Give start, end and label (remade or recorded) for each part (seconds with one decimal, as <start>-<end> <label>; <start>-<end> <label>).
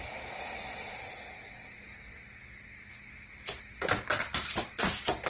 0.0-5.3 recorded